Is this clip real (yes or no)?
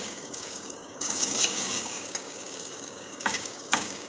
no